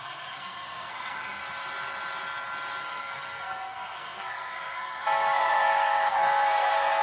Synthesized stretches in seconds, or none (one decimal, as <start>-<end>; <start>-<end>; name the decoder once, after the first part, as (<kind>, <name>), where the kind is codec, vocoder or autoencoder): 0.0-1.4 (codec, SNAC); 2.8-7.0